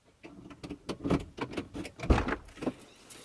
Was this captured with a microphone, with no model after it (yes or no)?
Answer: yes